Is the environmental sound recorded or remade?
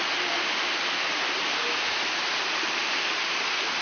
recorded